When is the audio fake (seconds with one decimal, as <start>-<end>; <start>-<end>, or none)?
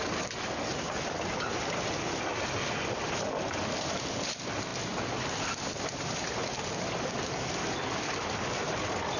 none